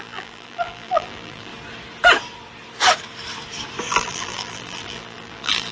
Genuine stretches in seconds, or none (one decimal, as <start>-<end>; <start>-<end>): 1.5-3.9